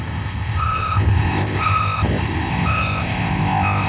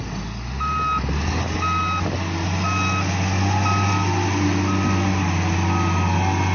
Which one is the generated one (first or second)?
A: first